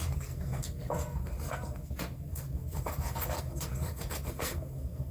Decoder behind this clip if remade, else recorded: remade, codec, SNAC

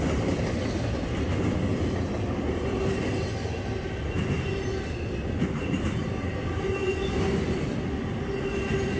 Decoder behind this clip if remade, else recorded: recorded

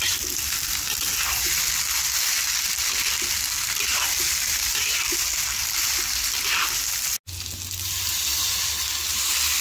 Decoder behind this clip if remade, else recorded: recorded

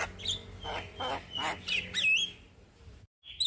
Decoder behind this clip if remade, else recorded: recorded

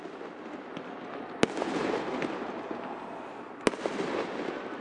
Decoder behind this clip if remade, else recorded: recorded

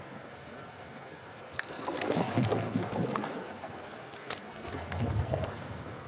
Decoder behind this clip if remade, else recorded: remade, codec, SNAC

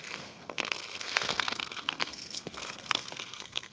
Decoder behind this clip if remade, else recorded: remade, codec, SNAC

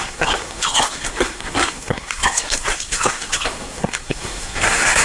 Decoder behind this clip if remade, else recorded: remade, codec, SNAC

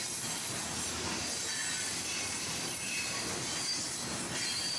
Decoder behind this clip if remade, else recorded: recorded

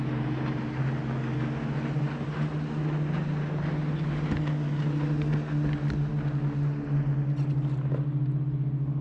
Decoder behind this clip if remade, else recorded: recorded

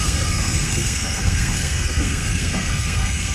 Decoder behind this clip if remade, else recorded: remade, codec, SNAC